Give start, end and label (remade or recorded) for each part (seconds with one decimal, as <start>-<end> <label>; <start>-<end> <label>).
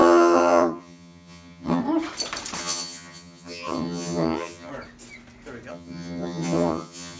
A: 0.0-1.8 remade; 1.8-2.6 recorded; 2.6-4.7 remade; 4.7-5.7 recorded; 5.7-7.2 remade